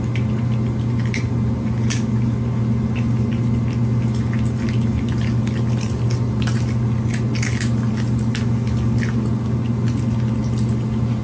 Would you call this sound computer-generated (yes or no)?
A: no